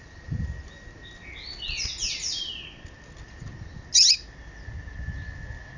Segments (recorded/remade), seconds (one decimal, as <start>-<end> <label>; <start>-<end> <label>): 0.0-5.8 recorded